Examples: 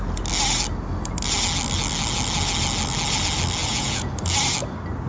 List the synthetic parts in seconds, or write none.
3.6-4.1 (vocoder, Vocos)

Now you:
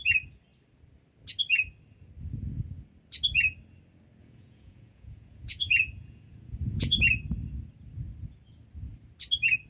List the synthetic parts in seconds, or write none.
4.2-7.0 (vocoder, Vocos)

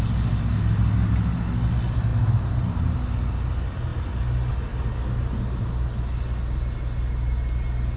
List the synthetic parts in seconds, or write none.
none

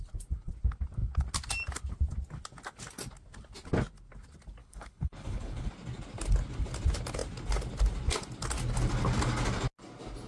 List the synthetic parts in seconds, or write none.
4.6-5.7 (codec, HILCodec)

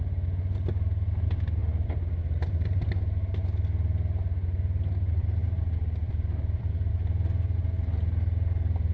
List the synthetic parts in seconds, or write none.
1.6-2.9 (vocoder, BigVGAN v2); 6.0-6.9

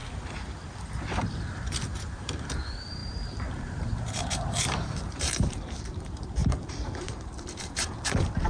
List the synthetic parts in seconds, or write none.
1.2-8.5 (vocoder, BigVGAN v2)